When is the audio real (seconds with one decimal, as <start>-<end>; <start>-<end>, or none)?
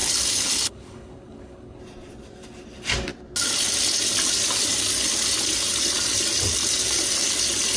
1.8-7.8